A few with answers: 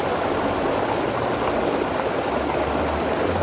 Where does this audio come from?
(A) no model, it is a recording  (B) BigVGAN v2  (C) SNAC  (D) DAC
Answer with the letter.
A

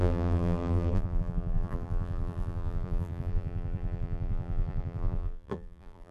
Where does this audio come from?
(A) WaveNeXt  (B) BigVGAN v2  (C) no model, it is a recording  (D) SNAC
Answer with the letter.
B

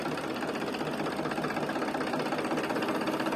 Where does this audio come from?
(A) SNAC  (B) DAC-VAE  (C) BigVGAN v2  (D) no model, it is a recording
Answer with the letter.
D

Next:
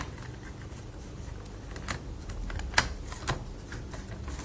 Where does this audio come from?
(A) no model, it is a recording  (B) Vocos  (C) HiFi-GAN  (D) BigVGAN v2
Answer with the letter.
A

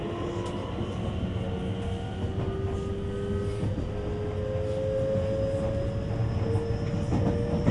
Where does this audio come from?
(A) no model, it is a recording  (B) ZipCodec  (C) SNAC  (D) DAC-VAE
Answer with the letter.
A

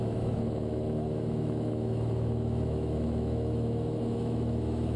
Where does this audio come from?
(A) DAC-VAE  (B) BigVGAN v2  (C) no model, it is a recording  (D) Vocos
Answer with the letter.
A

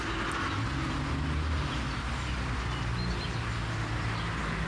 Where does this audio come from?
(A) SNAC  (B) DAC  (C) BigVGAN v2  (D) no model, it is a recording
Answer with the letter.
D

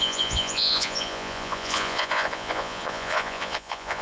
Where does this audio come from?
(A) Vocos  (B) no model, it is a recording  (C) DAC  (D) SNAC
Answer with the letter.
A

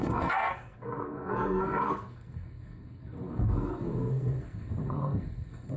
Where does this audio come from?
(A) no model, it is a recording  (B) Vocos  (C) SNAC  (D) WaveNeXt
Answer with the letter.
C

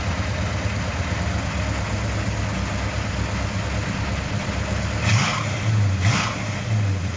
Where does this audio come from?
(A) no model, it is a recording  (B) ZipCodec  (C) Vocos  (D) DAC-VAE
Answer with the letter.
A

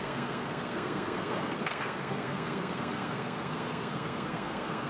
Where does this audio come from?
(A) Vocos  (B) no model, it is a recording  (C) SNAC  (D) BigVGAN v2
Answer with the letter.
C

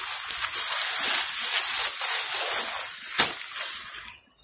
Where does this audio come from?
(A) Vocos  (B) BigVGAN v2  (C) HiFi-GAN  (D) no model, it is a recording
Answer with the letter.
D